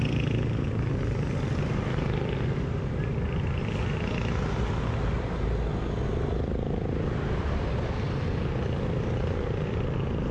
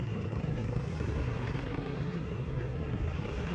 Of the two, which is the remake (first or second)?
second